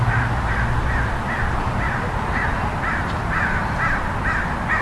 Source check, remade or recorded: recorded